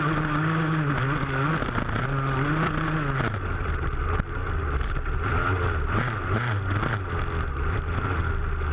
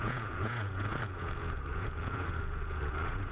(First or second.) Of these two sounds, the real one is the first